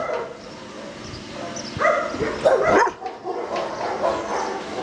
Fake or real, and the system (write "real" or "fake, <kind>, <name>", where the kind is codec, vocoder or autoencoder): real